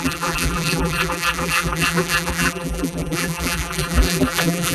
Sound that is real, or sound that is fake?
fake